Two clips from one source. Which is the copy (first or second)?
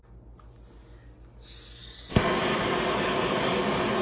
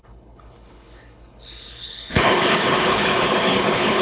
second